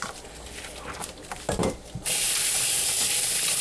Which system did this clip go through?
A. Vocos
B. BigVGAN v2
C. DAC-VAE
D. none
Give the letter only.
D